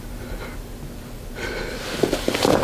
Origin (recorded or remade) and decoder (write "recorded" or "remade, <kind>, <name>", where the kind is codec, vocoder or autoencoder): remade, vocoder, BigVGAN v2